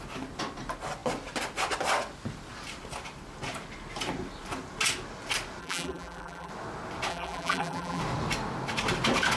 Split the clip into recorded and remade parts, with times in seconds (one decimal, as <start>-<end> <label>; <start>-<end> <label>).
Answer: 0.0-5.6 recorded; 5.6-6.5 remade; 6.5-7.1 recorded; 7.1-8.0 remade; 8.0-9.4 recorded